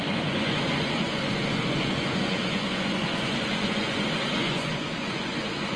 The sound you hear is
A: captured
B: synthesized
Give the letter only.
B